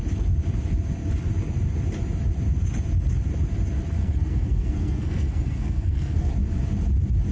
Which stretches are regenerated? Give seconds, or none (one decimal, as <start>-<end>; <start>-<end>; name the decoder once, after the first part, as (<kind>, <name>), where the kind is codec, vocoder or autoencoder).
4.0-6.3 (codec, SNAC)